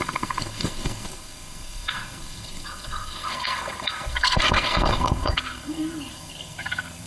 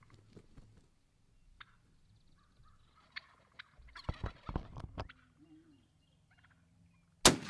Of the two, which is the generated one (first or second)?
first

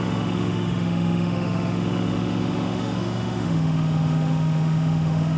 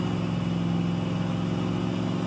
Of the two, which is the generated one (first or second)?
first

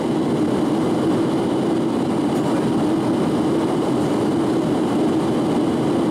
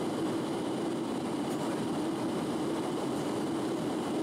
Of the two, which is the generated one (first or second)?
second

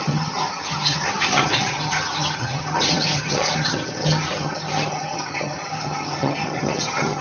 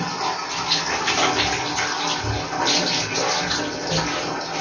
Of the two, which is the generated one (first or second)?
first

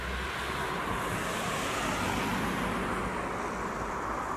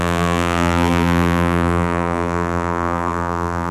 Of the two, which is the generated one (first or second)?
second